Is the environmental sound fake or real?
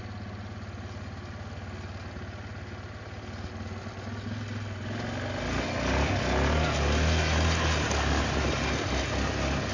real